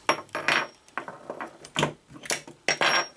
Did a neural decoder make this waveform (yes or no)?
no